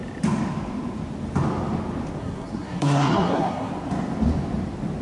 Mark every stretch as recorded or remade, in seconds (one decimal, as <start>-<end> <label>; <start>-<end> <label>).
0.0-2.2 recorded; 2.2-3.7 remade; 3.7-5.0 recorded